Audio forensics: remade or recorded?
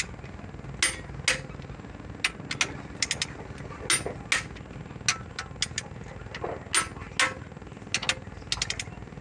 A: recorded